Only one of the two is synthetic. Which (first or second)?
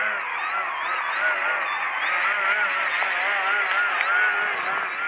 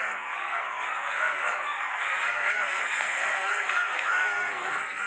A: second